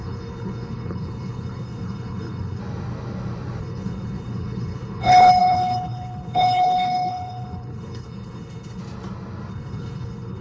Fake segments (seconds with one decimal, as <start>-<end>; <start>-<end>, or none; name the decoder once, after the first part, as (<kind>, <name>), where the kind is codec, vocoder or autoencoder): 0.0-2.6 (codec, HILCodec); 3.6-8.8; 9.5-10.4